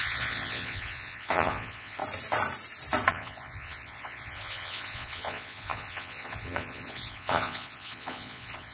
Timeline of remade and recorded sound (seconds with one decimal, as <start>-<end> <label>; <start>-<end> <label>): 0.0-2.0 remade; 2.0-3.1 recorded; 3.1-8.7 remade